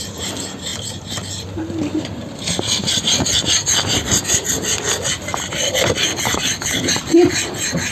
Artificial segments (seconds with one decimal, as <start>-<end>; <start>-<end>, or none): 6.3-6.8